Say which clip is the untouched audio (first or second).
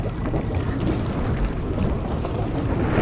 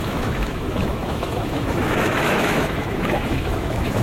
first